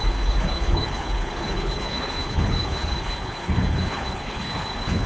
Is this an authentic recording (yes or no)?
no